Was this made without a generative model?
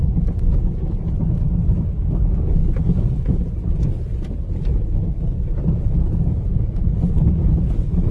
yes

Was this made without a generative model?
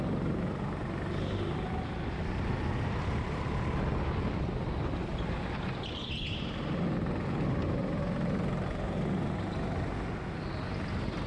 yes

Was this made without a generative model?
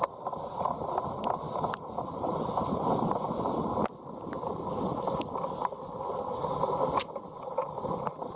yes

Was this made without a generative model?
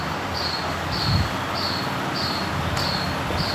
yes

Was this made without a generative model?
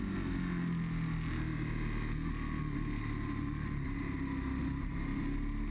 yes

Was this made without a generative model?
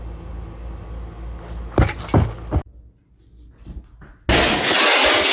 yes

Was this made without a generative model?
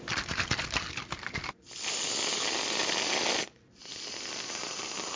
yes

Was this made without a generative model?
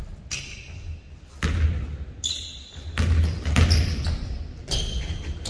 yes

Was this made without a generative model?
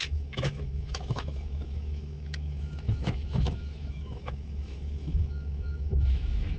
no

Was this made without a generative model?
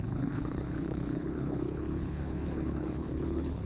no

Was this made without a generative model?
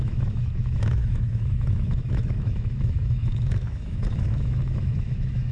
no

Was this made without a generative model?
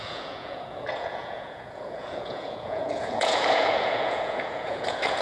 no